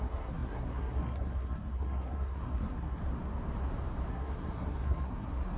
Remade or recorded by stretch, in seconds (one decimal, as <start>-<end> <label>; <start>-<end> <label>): 0.0-3.0 remade; 3.0-4.1 recorded; 4.1-5.6 remade